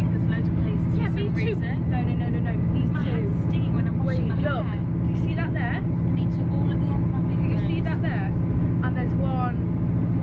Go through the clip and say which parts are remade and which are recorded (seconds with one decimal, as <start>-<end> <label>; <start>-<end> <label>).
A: 0.0-3.0 recorded; 3.0-3.7 remade; 3.7-10.2 recorded

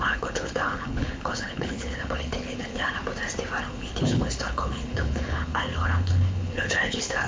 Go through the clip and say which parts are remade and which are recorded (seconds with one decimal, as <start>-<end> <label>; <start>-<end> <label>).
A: 0.0-3.0 remade; 3.0-3.6 recorded; 3.6-7.3 remade